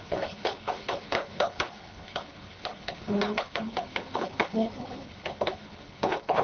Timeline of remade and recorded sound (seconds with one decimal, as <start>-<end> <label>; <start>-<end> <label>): 0.0-6.4 remade